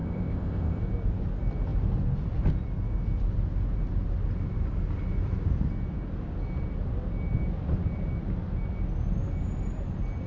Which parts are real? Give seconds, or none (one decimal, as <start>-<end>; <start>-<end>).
0.8-10.3